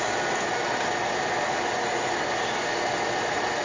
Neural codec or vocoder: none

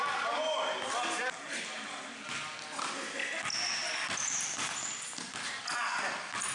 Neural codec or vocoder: none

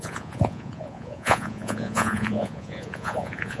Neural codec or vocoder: vocoder, Vocos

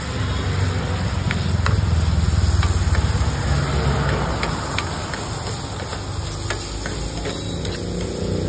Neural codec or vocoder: none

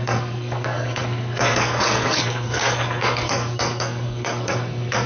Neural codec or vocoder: codec, SNAC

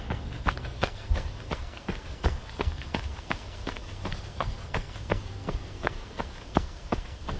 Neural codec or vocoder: codec, SNAC